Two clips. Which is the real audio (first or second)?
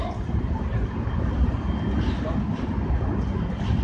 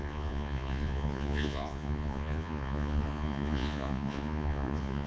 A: first